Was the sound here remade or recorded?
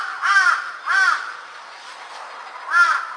recorded